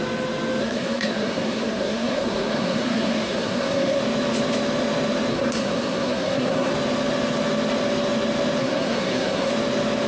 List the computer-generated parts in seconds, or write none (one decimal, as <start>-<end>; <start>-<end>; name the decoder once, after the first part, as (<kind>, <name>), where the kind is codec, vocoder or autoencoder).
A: 0.6-4.0 (codec, SNAC); 5.3-6.7; 8.6-9.5